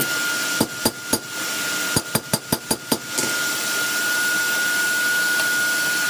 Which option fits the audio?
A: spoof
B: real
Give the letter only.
B